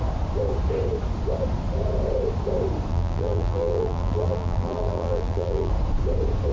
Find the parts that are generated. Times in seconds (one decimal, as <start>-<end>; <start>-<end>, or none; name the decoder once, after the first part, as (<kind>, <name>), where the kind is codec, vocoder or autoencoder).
2.9-5.7 (vocoder, BigVGAN v2)